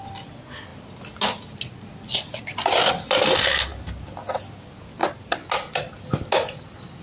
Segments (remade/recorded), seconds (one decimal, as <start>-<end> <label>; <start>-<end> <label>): 0.0-7.0 recorded